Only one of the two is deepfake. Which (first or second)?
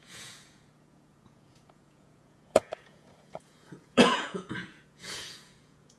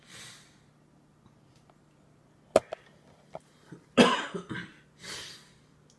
first